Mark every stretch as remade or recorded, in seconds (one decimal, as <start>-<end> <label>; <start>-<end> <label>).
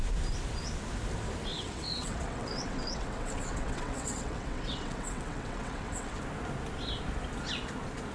0.0-1.5 recorded; 1.5-6.2 remade; 6.2-8.1 recorded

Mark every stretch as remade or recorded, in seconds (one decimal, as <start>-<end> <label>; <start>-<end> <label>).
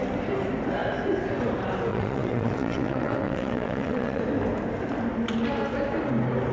0.0-1.9 recorded; 1.9-4.2 remade; 4.2-6.5 recorded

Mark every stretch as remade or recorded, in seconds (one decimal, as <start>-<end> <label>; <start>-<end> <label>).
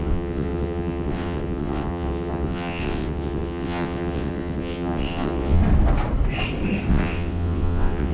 0.0-5.6 remade; 5.6-6.9 recorded; 6.9-8.1 remade